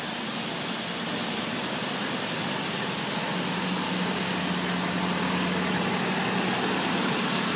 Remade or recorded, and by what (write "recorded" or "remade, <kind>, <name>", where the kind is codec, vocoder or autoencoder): recorded